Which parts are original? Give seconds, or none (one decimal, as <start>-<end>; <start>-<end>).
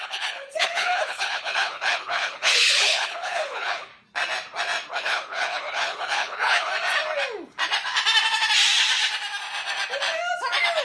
3.9-4.9; 6.7-10.8